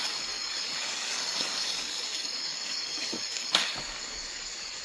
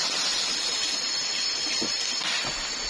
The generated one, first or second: first